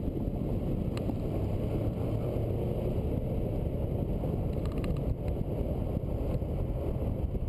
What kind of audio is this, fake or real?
real